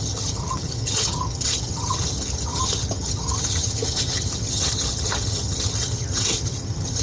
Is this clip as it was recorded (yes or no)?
no